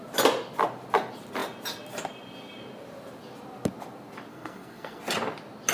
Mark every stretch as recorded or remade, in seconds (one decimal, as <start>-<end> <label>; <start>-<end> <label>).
0.0-4.3 recorded; 4.3-5.0 remade; 5.0-5.7 recorded